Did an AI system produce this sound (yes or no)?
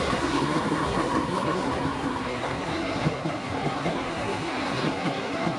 yes